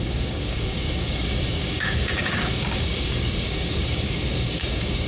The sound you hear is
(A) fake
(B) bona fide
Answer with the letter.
A